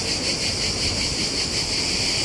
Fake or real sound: real